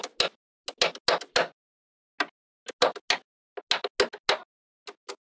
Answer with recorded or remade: recorded